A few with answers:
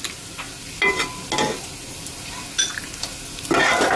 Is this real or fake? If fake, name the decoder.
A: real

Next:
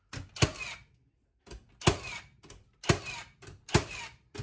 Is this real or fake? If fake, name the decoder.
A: real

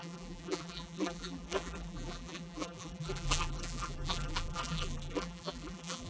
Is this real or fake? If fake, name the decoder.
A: fake, vocoder, BigVGAN v2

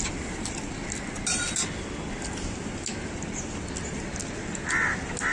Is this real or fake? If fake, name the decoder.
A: real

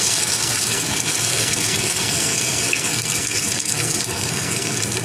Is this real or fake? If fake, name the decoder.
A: fake, codec, SNAC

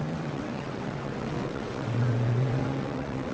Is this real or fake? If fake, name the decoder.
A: fake, vocoder, WaveNeXt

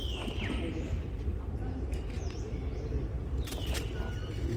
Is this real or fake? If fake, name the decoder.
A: real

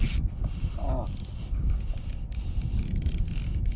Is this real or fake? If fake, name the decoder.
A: real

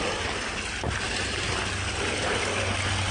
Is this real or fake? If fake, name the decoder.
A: real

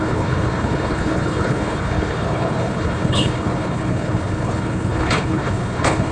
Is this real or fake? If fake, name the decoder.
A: fake, codec, HILCodec